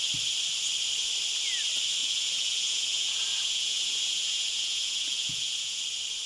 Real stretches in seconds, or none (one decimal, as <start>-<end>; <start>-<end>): 0.0-2.0; 5.8-6.3